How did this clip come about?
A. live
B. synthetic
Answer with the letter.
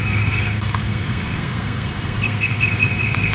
B